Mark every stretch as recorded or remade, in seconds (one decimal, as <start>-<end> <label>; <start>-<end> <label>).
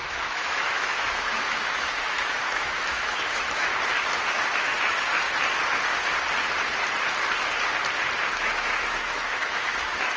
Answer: 0.0-3.7 remade; 3.7-4.6 recorded; 4.6-5.1 remade; 5.1-8.2 recorded; 8.2-10.2 remade